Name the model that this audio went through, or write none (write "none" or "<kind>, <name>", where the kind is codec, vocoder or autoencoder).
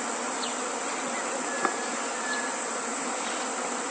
none